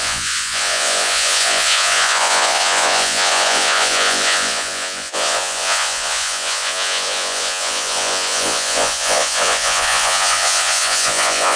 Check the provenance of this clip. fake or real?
fake